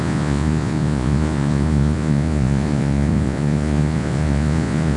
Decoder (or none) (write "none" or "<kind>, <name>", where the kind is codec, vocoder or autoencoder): vocoder, Vocos